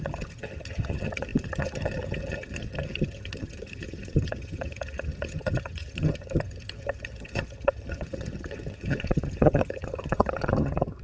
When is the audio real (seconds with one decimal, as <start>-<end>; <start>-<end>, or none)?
none